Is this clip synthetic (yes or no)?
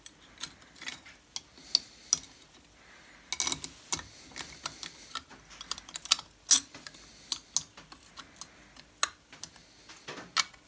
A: no